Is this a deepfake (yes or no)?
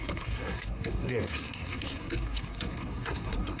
yes